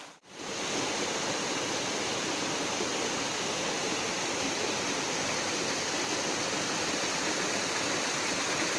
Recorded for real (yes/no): yes